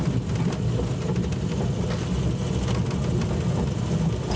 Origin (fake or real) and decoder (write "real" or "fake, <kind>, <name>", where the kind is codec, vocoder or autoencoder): real